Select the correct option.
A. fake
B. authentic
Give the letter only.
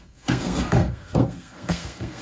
A